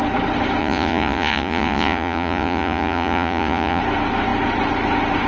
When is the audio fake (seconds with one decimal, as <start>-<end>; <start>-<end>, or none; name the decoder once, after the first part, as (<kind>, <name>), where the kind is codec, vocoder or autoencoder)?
0.6-3.8 (vocoder, Vocos)